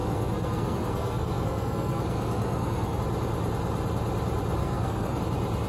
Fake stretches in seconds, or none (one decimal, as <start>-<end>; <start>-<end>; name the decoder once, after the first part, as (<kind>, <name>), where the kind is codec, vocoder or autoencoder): 0.0-3.0 (codec, SNAC); 4.6-5.2